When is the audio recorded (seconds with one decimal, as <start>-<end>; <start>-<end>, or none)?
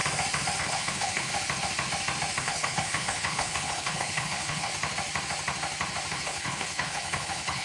0.0-0.6; 1.3-2.4; 4.7-6.1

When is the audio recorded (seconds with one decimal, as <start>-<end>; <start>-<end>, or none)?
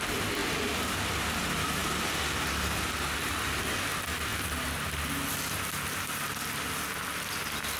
0.0-0.4; 1.4-7.8